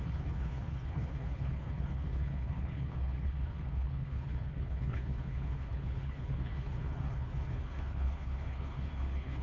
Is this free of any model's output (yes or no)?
no